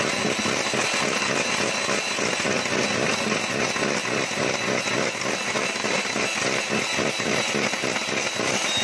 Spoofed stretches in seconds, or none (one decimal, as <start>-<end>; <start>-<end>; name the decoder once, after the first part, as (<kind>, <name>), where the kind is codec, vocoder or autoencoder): none